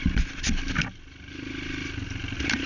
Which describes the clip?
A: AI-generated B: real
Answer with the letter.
B